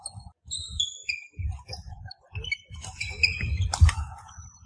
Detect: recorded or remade recorded